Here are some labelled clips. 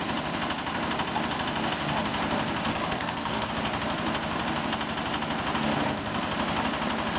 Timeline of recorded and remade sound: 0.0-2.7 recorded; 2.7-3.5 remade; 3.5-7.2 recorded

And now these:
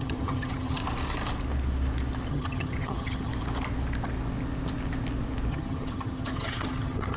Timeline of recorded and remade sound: 0.0-0.8 remade; 0.8-2.3 recorded; 2.3-3.3 remade; 3.3-5.5 recorded; 5.5-7.2 remade

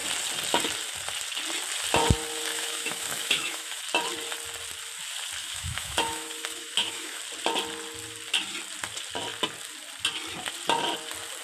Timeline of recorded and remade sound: 0.0-2.5 recorded; 2.5-3.8 remade; 3.8-5.4 recorded; 5.4-7.2 remade; 7.2-11.4 recorded

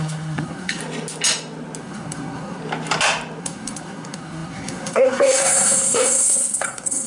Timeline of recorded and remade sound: 0.0-0.8 remade; 0.8-1.8 recorded; 1.8-2.6 remade; 2.6-3.4 recorded; 3.4-7.1 remade

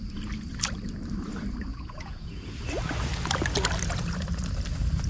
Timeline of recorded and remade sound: 0.0-1.7 recorded; 1.7-2.5 remade; 2.5-5.1 recorded

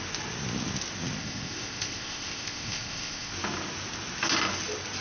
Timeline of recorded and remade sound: 0.0-1.2 recorded; 1.2-3.3 remade; 3.3-5.0 recorded